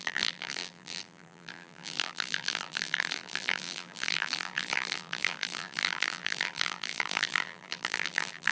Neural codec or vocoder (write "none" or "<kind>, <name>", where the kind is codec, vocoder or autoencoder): vocoder, BigVGAN v2